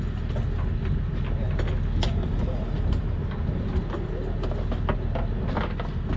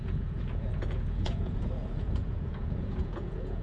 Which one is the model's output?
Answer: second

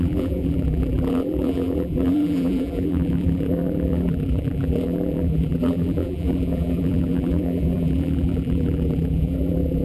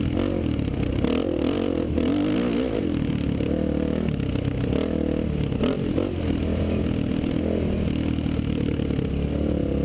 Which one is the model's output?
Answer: first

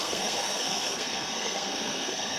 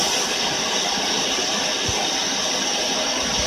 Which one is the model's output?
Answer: first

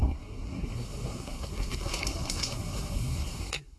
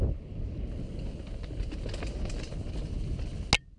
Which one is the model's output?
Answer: first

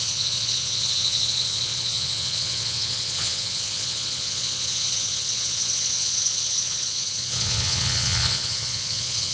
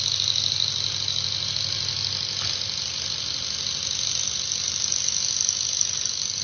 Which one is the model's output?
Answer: first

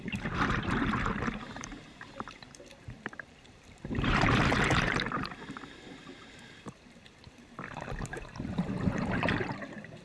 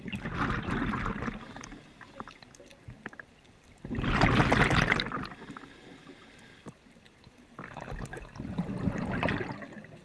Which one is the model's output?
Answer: first